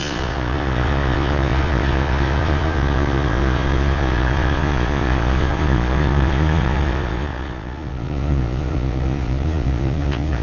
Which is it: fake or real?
fake